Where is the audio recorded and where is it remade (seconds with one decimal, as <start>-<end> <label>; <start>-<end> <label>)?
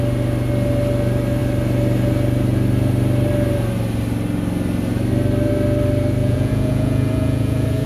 0.0-6.2 recorded; 6.2-7.9 remade